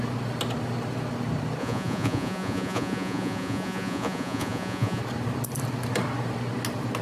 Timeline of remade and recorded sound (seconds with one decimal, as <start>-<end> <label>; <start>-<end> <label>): 0.0-1.6 recorded; 1.6-5.0 remade; 5.0-7.0 recorded